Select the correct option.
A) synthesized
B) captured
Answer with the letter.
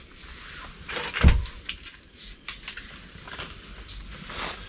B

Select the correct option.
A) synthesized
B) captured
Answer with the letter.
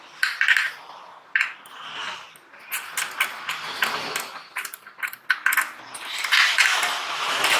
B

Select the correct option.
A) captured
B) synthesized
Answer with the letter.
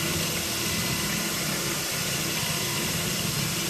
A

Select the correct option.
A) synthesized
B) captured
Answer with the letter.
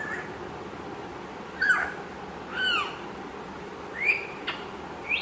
B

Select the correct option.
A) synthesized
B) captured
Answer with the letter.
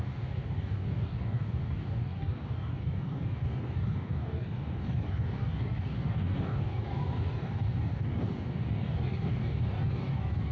A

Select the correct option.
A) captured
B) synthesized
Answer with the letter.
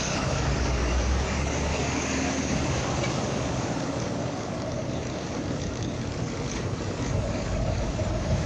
B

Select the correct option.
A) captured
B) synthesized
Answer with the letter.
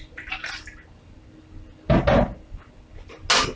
A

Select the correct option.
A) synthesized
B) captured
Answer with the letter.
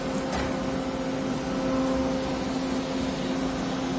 B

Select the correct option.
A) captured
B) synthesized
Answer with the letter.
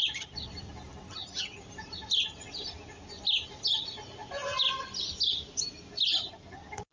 A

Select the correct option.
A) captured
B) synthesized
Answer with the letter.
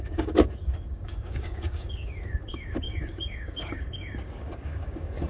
B